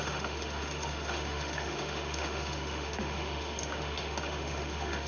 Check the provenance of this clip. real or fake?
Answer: fake